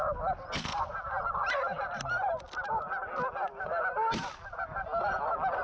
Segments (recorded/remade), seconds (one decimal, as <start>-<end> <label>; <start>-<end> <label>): 0.0-5.6 recorded